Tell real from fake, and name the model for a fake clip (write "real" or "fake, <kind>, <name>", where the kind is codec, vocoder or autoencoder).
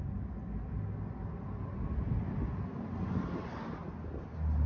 real